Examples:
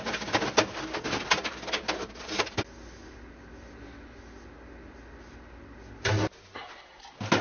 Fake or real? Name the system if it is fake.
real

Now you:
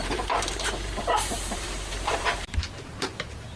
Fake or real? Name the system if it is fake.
fake, vocoder, BigVGAN v2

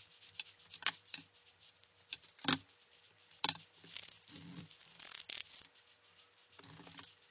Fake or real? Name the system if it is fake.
real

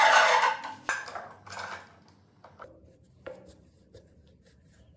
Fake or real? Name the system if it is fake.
real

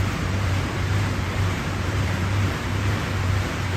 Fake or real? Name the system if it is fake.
fake, vocoder, BigVGAN v2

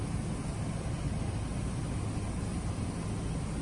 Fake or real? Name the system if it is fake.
real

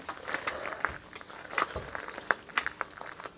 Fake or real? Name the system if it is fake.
real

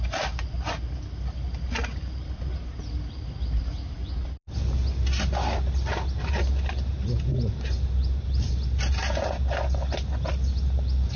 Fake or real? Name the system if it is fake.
real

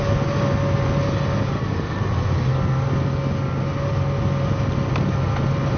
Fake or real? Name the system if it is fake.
real